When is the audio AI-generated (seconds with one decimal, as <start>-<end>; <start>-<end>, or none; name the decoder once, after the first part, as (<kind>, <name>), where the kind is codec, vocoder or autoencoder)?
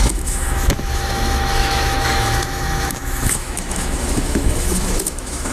0.0-5.5 (autoencoder, DAC-VAE)